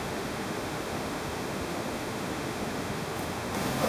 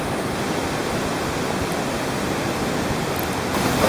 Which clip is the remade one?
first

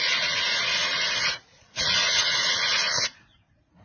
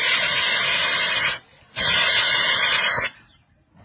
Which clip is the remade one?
first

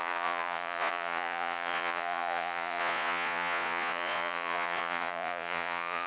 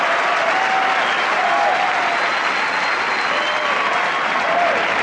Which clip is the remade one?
first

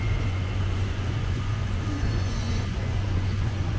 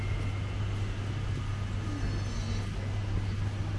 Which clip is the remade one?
first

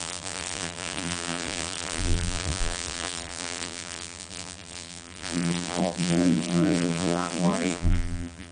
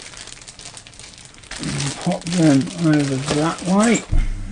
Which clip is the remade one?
first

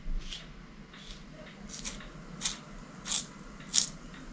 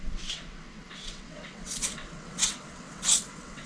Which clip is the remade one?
second